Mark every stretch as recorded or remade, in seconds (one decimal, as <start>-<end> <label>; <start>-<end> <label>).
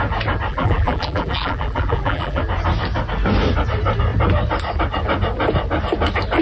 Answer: 0.0-0.5 recorded; 0.5-2.4 remade; 2.4-6.4 recorded